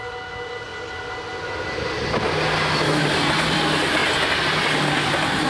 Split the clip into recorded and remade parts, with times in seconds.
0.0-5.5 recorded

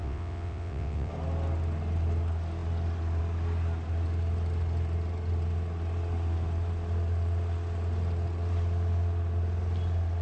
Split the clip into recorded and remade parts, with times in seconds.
0.0-1.1 remade; 1.1-10.2 recorded

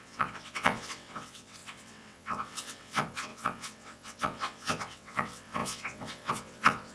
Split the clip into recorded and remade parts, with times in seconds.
0.0-6.9 remade